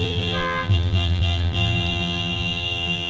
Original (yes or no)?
no